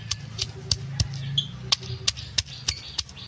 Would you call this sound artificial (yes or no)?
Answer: no